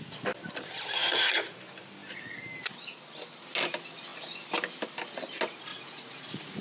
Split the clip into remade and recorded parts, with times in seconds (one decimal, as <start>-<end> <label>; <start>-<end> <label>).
0.0-1.0 recorded; 1.0-1.6 remade; 1.6-5.7 recorded; 5.7-6.6 remade